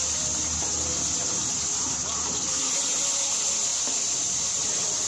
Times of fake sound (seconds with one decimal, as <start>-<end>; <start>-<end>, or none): none